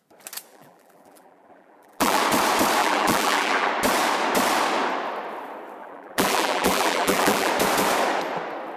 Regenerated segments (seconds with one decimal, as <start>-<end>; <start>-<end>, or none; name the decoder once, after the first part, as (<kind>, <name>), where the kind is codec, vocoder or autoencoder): 0.5-2.2 (vocoder, BigVGAN v2); 2.8-3.7; 5.8-7.5